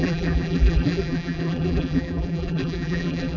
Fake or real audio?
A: fake